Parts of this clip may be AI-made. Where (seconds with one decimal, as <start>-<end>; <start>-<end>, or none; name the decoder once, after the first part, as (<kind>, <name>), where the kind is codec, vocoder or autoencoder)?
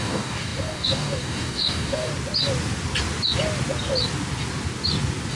0.0-2.1 (codec, DAC)